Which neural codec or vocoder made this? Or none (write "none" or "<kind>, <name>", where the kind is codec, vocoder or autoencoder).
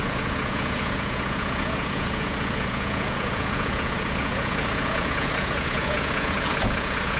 vocoder, Vocos